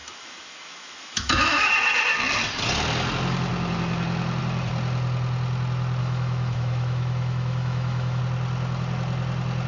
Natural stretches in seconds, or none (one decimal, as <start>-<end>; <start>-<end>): 1.7-6.0; 8.2-9.7